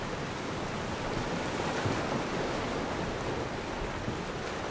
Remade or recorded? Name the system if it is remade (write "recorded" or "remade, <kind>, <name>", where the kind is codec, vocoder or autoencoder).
recorded